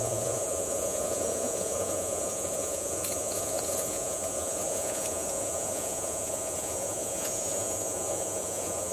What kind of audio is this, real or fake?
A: fake